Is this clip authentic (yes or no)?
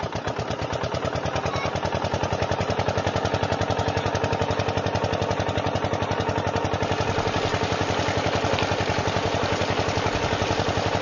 yes